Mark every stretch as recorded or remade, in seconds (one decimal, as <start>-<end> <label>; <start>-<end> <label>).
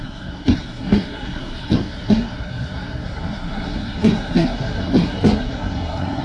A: 0.0-6.2 remade